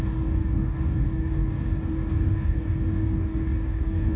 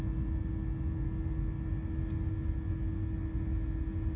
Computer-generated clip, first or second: first